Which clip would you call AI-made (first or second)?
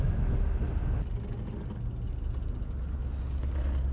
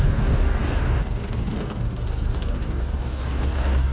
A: second